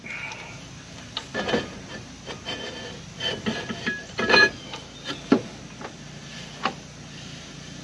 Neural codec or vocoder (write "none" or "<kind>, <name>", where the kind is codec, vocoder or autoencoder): none